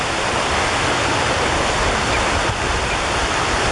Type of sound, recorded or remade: recorded